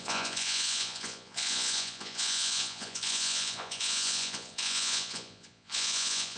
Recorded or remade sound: remade